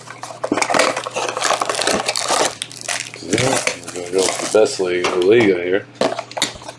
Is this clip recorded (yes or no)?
yes